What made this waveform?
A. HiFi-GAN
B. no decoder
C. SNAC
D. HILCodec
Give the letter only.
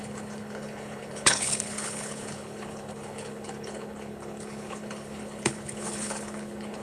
D